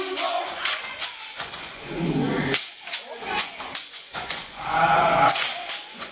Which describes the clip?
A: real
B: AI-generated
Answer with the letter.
B